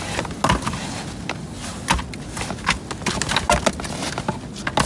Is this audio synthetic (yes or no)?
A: no